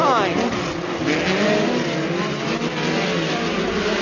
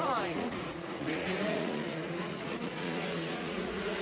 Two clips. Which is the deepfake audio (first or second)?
second